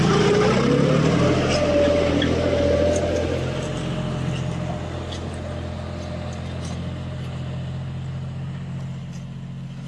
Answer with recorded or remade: recorded